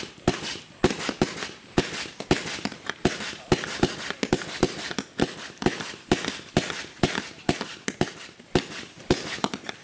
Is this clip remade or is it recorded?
recorded